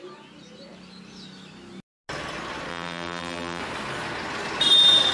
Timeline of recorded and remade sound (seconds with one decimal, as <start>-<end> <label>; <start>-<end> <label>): 0.0-2.7 recorded; 2.7-3.6 remade; 3.6-5.1 recorded